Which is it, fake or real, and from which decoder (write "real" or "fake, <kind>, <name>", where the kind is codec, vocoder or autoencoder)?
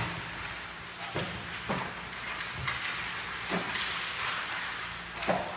real